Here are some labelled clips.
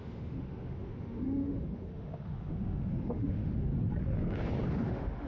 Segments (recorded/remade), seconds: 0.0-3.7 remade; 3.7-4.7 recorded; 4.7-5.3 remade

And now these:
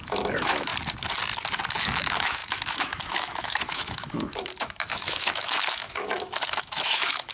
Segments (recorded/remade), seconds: 0.0-0.7 remade; 0.7-1.8 recorded; 1.8-7.3 remade

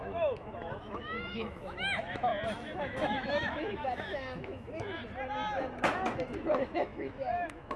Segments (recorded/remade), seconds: 0.0-2.3 remade; 2.3-2.8 recorded; 2.8-5.0 remade; 5.0-6.5 recorded; 6.5-7.8 remade

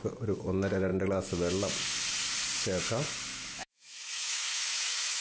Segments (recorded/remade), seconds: 0.0-3.3 recorded; 3.3-5.2 remade

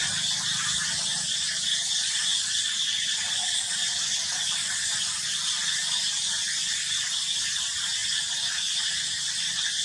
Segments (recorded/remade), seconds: 0.0-9.8 recorded

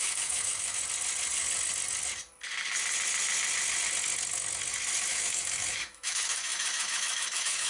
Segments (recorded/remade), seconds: 0.0-0.8 remade; 0.8-5.1 recorded; 5.1-7.7 remade

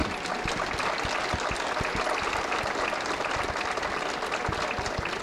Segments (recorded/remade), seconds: 0.0-5.2 recorded